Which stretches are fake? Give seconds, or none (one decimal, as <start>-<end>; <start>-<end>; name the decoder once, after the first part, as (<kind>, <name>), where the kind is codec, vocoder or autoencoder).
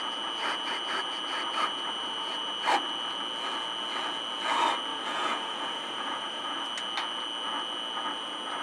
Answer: 4.9-6.6 (vocoder, Vocos)